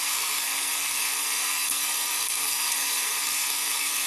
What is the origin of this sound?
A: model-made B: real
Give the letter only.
A